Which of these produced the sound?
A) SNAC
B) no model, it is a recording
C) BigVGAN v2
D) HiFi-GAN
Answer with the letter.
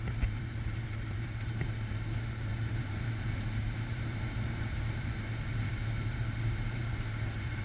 C